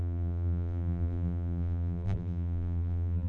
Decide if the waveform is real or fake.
fake